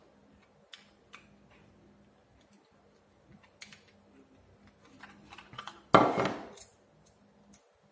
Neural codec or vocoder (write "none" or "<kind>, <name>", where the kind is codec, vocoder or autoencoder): none